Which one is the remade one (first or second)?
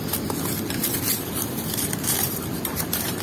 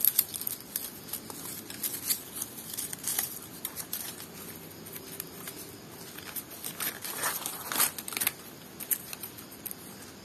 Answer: first